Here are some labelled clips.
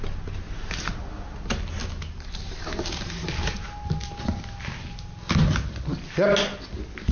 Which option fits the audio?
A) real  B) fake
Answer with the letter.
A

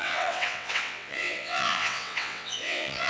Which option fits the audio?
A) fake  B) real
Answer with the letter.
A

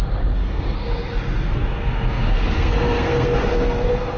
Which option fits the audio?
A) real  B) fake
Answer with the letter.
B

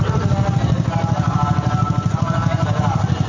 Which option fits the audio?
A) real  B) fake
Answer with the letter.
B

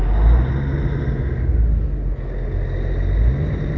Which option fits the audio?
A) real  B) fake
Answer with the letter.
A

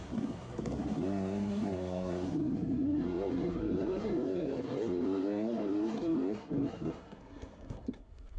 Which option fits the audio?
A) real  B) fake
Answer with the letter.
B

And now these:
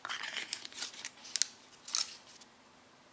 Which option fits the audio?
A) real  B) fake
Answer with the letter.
A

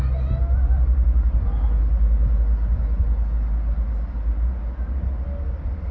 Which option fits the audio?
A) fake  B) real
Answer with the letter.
B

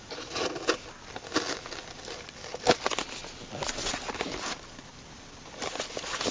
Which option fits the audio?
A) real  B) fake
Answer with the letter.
A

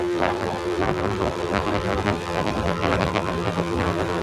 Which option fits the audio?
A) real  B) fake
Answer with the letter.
B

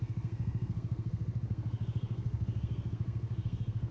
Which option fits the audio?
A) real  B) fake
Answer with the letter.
B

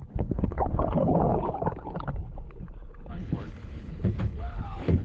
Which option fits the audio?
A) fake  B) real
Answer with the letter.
A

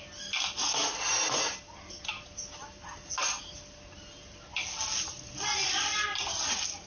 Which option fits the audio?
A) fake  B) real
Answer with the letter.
B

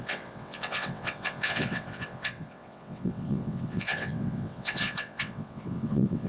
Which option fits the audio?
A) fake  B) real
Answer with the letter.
A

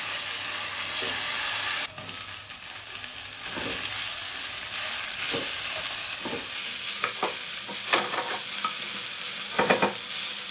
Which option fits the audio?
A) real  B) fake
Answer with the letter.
A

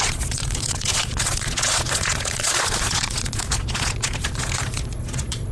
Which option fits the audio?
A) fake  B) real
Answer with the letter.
A